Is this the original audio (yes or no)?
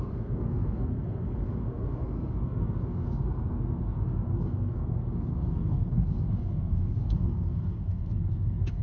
no